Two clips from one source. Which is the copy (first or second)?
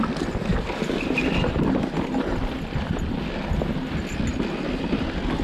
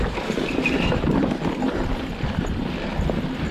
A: second